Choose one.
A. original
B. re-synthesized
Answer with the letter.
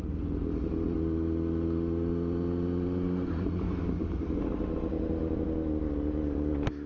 A